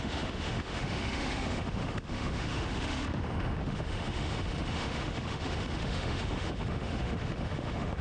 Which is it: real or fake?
fake